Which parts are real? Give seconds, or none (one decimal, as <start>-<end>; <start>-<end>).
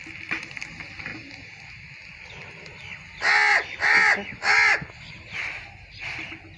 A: 0.0-6.6